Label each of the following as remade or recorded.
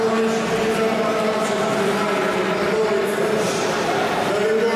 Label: recorded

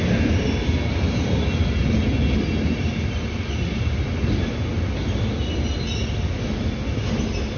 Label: recorded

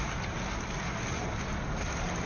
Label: recorded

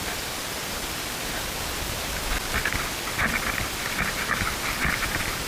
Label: recorded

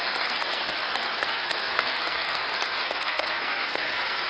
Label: remade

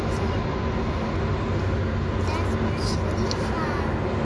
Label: recorded